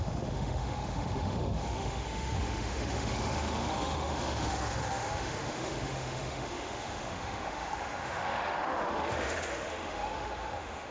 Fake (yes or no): yes